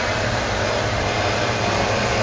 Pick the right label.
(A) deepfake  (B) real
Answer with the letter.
B